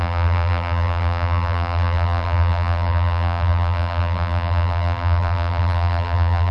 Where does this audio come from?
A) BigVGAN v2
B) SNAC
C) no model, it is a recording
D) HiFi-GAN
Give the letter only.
A